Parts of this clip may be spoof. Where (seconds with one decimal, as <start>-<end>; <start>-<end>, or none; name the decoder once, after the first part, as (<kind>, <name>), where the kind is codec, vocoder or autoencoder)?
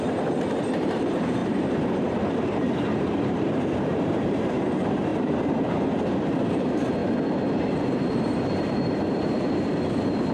0.0-7.0 (vocoder, BigVGAN v2); 7.7-10.3